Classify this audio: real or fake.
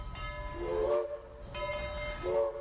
real